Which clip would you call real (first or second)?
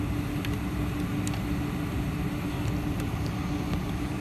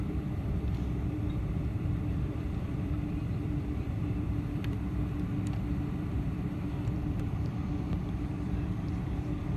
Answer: first